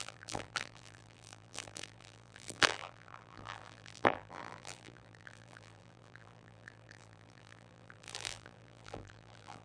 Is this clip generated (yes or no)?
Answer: yes